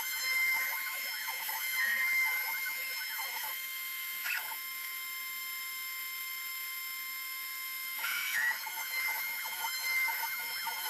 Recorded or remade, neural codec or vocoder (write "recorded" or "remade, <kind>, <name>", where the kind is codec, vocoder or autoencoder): remade, autoencoder, DAC-VAE